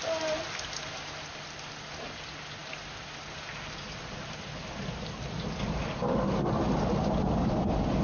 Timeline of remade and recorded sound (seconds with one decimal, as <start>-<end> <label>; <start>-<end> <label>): 0.0-8.0 recorded